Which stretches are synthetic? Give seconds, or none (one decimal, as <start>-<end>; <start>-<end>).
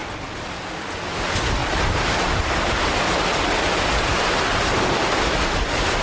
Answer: 1.6-2.5; 4.1-4.6